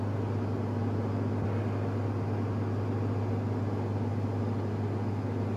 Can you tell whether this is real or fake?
real